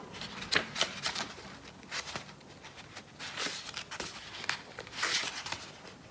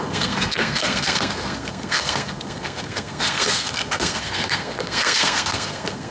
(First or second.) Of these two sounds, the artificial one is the second